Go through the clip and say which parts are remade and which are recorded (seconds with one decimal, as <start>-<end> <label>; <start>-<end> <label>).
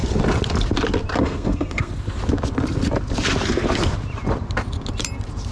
0.0-1.2 recorded; 1.2-1.9 remade; 1.9-5.5 recorded